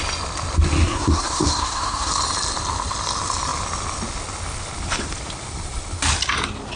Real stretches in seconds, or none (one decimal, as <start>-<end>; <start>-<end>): 0.0-0.8; 2.1-6.8

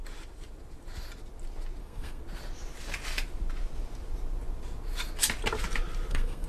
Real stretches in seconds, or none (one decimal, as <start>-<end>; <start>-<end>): 0.0-1.8; 2.2-6.1

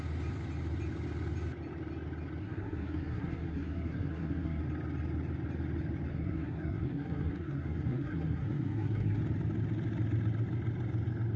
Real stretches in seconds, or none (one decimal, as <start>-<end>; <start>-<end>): 0.0-2.4; 4.6-6.1; 9.2-11.4

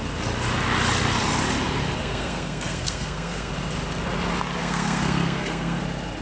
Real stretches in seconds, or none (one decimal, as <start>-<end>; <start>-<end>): 0.0-2.0; 3.5-4.6; 5.8-6.2

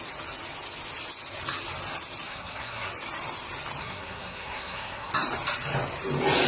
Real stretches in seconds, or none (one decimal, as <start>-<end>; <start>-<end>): 0.0-2.3; 2.9-3.8; 5.1-6.5

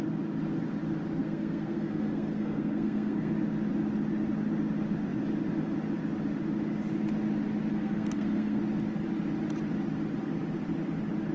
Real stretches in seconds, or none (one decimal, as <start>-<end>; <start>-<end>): 0.0-1.2; 3.3-7.7; 8.6-11.3

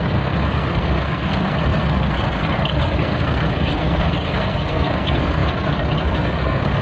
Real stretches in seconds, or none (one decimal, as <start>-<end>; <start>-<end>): none

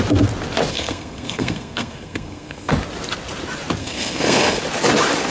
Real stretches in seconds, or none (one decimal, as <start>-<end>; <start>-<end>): 0.0-0.7; 2.7-3.8; 4.6-5.3